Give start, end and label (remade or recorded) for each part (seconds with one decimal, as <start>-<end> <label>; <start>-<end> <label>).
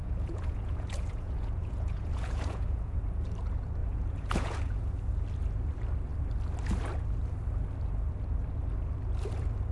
0.0-3.0 remade; 3.0-3.8 recorded; 3.8-4.9 remade; 4.9-9.7 recorded